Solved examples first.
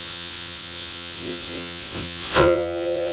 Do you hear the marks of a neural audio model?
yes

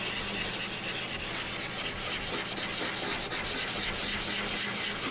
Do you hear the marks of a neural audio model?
no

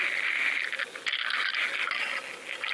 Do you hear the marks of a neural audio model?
no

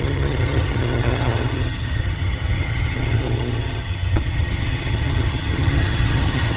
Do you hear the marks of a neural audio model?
yes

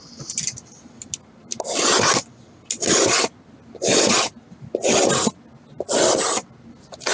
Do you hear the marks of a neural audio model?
no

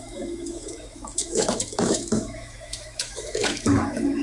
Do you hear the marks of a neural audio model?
yes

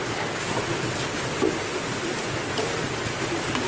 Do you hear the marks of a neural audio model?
no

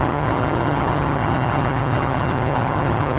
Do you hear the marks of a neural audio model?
yes